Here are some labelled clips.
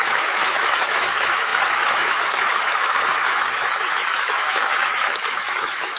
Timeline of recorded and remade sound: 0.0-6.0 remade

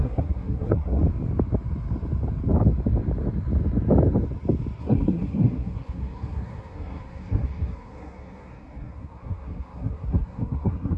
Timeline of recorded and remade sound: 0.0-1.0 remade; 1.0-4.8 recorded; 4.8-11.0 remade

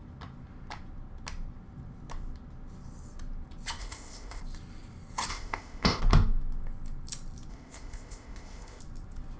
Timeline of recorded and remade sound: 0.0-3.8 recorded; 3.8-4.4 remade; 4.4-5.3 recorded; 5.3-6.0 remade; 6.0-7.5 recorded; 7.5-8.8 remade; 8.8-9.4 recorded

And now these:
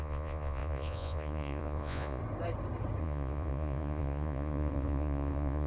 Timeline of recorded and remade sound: 0.0-2.2 remade; 2.2-3.0 recorded; 3.0-5.7 remade